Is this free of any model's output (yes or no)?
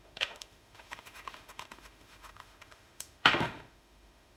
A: no